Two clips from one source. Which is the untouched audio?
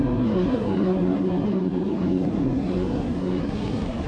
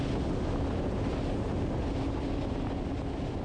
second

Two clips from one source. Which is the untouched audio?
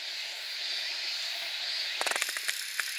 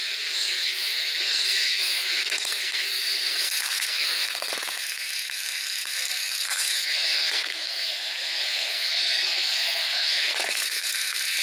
first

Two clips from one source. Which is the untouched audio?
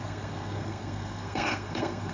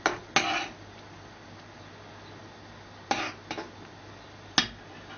second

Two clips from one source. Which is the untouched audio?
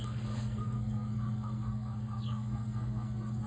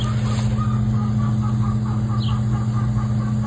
second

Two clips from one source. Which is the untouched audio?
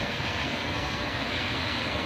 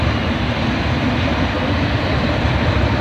second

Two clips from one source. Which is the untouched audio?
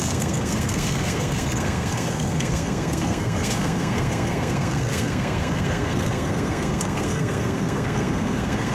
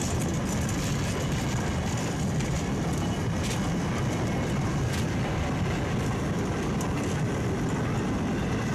second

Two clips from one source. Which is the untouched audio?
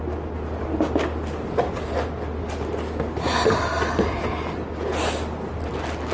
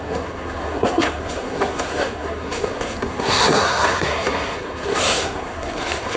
first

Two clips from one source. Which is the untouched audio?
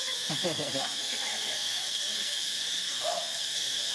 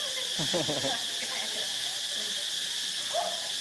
second